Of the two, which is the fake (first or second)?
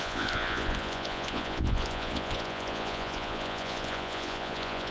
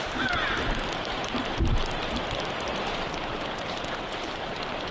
first